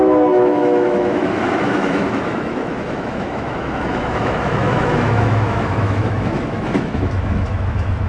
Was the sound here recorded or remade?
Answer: remade